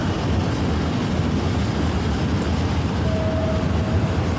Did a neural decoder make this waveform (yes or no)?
no